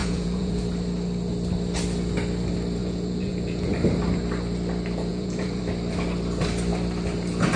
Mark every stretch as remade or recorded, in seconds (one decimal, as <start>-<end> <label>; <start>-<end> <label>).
0.0-0.6 remade; 0.6-2.8 recorded; 2.8-3.7 remade; 3.7-5.1 recorded; 5.1-5.6 remade; 5.6-7.6 recorded